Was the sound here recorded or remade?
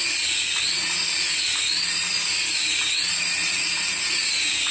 remade